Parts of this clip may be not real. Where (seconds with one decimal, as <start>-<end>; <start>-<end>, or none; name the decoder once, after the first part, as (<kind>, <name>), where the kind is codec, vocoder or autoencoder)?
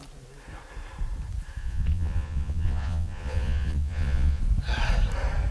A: 1.6-4.4 (vocoder, Vocos)